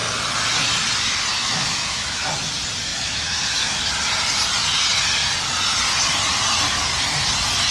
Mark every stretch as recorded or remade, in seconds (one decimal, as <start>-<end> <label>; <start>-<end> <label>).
0.0-1.4 recorded; 1.4-2.2 remade; 2.2-2.9 recorded; 2.9-3.9 remade; 3.9-7.7 recorded